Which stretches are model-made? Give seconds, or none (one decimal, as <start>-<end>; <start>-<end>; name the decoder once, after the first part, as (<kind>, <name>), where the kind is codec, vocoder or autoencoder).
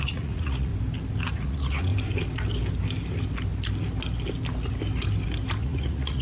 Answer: 0.0-0.7 (vocoder, Vocos); 1.3-1.9; 5.6-6.2